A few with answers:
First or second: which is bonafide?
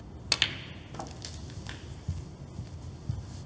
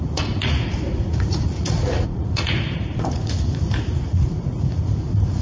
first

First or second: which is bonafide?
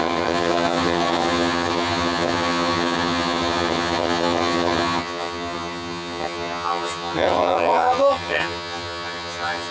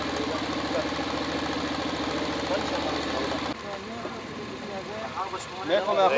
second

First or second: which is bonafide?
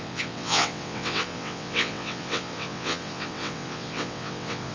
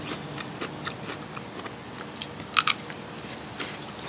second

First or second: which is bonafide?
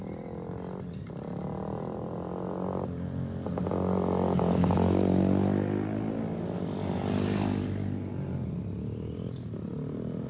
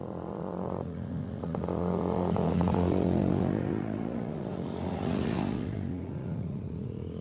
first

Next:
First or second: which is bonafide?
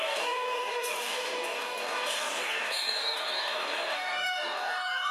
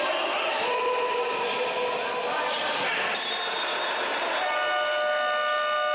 second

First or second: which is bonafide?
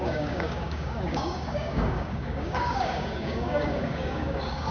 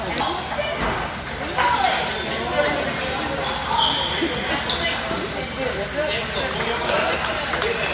second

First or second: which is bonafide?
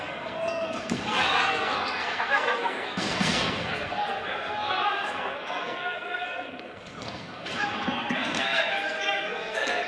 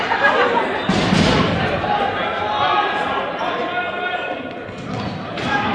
second